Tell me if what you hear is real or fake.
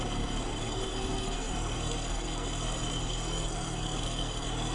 fake